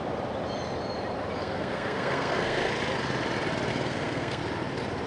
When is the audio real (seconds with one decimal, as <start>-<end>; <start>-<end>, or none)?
0.0-1.4; 2.7-3.7; 4.4-5.1